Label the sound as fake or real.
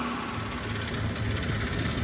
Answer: real